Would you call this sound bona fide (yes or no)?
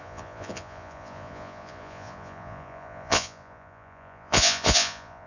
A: no